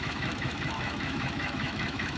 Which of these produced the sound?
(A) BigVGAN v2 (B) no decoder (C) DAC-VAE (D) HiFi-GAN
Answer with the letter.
C